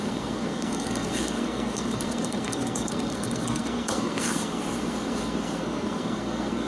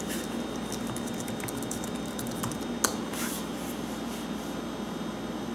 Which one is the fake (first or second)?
first